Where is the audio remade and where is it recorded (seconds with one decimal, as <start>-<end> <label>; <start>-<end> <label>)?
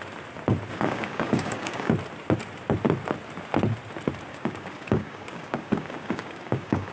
0.0-0.7 recorded; 0.7-1.9 remade; 1.9-4.3 recorded; 4.3-6.9 remade